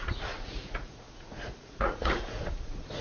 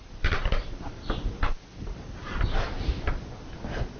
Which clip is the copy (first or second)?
first